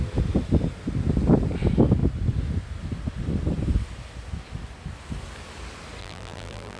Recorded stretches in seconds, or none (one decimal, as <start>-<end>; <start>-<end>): 0.0-6.0